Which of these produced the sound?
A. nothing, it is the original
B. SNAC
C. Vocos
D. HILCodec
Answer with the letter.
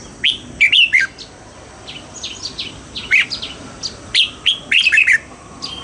A